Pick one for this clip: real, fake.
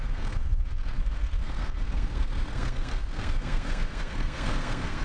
fake